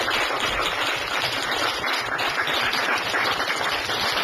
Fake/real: real